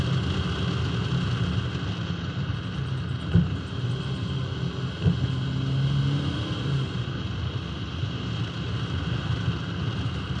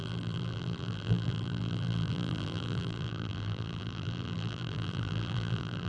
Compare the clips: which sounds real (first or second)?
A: first